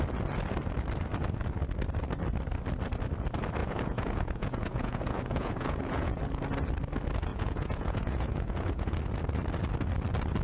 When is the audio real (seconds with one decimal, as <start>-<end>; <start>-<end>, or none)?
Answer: 0.0-3.6; 6.2-7.3; 9.0-10.4